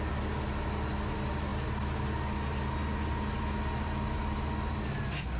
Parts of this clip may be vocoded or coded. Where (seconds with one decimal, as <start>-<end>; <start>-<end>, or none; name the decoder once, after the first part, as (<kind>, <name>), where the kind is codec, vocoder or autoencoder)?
none